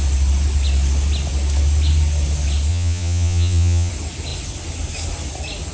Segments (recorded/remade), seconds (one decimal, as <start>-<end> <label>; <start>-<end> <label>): 0.0-2.7 recorded; 2.7-3.9 remade; 3.9-5.7 recorded